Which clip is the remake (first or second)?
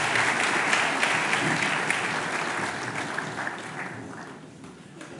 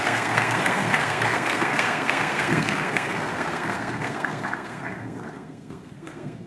second